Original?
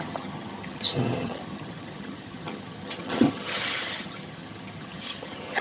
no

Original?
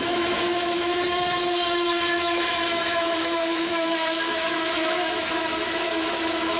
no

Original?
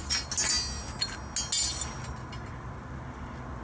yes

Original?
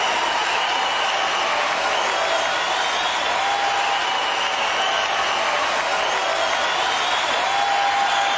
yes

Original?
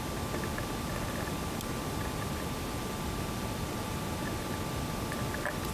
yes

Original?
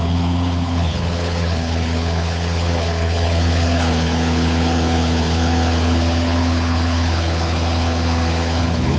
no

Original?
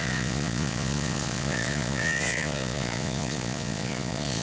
no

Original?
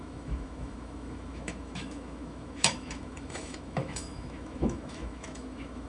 no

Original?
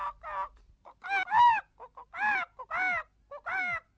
yes